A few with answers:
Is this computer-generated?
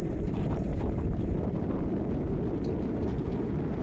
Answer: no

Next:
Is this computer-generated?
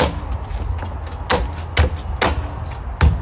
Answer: no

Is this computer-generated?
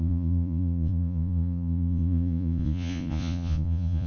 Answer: yes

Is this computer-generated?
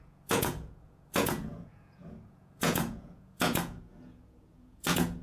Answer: yes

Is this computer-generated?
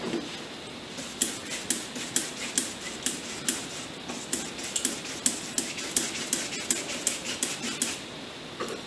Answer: no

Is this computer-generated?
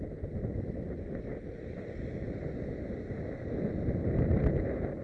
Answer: no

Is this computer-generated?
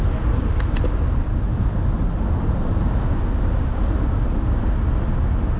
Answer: no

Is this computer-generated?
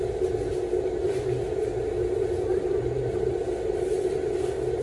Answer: no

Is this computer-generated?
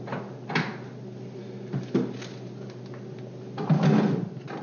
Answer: no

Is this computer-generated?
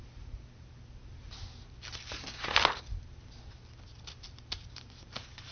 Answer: no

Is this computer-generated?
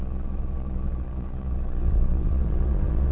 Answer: yes